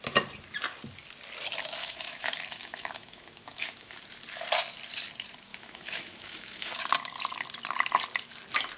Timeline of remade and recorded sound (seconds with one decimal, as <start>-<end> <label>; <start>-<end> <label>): 0.0-1.8 recorded; 1.8-3.9 remade; 3.9-5.5 recorded; 5.5-6.8 remade; 6.8-8.8 recorded